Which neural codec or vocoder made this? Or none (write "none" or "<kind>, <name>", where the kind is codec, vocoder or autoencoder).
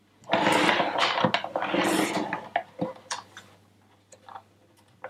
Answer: none